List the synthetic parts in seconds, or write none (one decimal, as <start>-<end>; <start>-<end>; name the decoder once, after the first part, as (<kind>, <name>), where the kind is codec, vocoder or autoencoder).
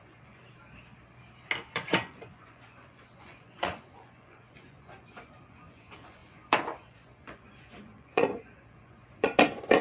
0.0-0.4 (vocoder, Vocos); 1.7-9.8